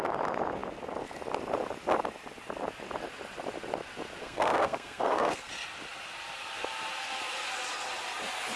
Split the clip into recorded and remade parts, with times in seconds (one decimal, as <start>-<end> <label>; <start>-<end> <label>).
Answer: 0.0-4.2 recorded; 4.2-5.5 remade; 5.5-8.6 recorded